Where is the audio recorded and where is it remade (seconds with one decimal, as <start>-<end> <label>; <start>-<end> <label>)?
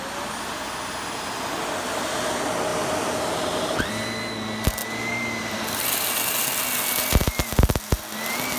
0.0-2.7 recorded; 2.7-3.9 remade; 3.9-4.8 recorded; 4.8-6.5 remade; 6.5-8.6 recorded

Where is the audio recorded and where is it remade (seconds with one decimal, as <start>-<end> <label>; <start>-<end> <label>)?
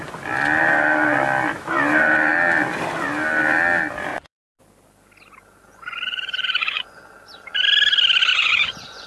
0.0-4.1 recorded; 4.1-4.6 remade; 4.6-5.7 recorded; 5.7-7.0 remade; 7.0-8.3 recorded; 8.3-9.1 remade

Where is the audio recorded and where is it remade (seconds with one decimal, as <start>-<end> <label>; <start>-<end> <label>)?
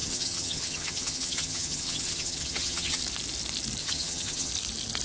0.0-3.0 remade; 3.0-3.8 recorded; 3.8-4.5 remade; 4.5-5.0 recorded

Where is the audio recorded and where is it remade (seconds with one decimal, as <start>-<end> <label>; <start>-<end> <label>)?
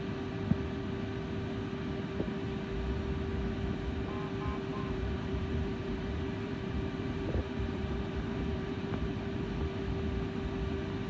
0.0-4.7 recorded; 4.7-9.6 remade; 9.6-11.1 recorded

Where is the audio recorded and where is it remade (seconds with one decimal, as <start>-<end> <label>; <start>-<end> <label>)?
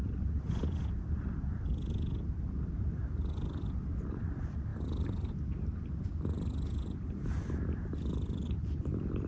0.0-9.3 recorded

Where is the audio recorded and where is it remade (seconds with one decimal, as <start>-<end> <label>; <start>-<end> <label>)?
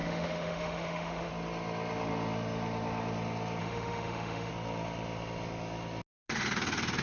0.0-1.3 remade; 1.3-3.6 recorded; 3.6-4.5 remade; 4.5-7.0 recorded